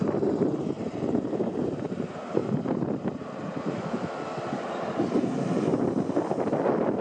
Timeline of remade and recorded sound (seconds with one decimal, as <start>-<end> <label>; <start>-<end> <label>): 0.0-2.4 recorded; 2.4-4.7 remade; 4.7-7.0 recorded